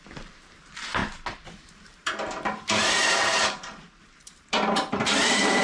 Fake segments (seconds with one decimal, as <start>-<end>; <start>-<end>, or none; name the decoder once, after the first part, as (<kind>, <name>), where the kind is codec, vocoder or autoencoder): 0.0-1.0 (vocoder, BigVGAN v2); 1.5-5.6